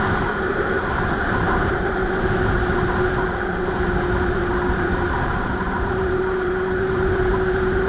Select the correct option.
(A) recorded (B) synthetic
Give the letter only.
B